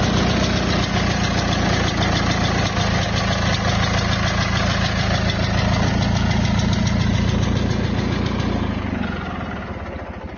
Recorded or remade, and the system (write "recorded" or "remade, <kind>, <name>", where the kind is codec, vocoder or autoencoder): recorded